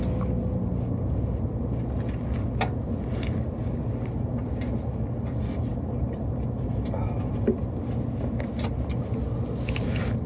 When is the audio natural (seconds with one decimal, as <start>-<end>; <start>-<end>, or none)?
0.0-10.3